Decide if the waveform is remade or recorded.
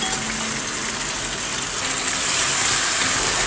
recorded